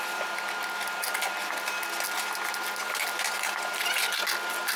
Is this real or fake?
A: real